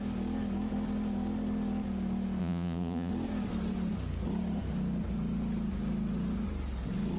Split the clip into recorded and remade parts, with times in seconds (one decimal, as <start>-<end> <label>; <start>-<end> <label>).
0.0-2.4 recorded; 2.4-3.1 remade; 3.1-7.2 recorded

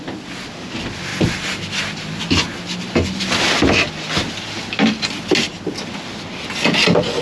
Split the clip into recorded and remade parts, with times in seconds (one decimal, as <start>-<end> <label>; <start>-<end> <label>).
0.0-7.2 recorded

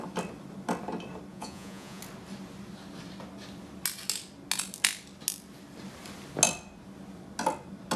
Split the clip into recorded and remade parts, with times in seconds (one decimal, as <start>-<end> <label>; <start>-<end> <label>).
0.0-1.3 recorded; 1.3-2.0 remade; 2.0-8.0 recorded

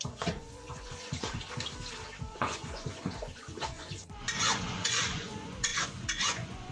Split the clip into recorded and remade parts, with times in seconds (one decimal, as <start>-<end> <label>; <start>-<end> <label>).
0.0-1.4 remade; 1.4-2.2 recorded; 2.2-6.7 remade

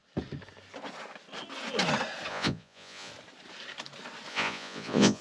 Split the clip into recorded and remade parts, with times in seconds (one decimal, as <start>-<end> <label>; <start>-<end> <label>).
0.0-2.3 recorded; 2.3-3.1 remade; 3.1-4.3 recorded; 4.3-5.2 remade

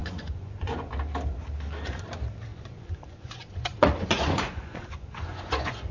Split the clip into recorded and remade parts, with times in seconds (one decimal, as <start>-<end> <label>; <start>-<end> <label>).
0.0-0.9 remade; 0.9-2.5 recorded; 2.5-5.9 remade

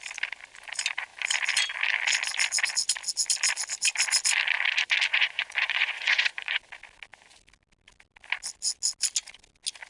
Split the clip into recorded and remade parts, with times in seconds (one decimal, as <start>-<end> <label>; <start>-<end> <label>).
0.0-5.1 recorded; 5.1-6.6 remade; 6.6-9.9 recorded